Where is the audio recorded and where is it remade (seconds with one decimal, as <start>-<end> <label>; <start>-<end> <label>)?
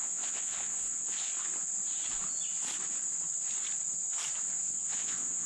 0.0-1.3 remade; 1.3-4.6 recorded; 4.6-5.5 remade